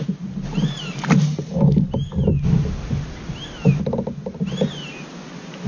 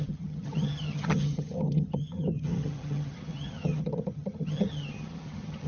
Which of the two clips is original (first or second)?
first